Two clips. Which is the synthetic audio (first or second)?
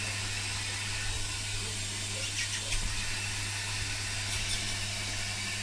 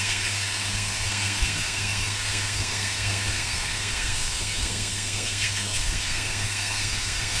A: second